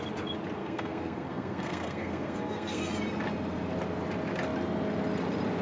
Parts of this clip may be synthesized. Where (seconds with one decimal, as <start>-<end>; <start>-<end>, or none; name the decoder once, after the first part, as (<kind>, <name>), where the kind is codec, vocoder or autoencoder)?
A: 0.6-2.9 (codec, SNAC)